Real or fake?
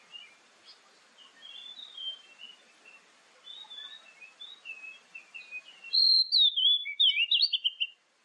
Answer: real